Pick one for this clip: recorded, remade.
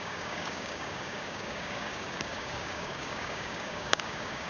remade